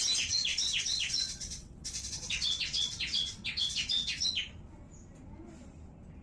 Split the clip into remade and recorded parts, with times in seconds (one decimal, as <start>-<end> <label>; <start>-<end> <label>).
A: 0.0-0.5 recorded; 0.5-4.2 remade; 4.2-6.2 recorded